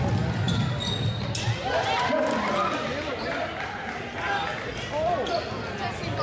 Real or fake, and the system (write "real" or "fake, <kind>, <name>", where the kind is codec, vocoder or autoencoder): real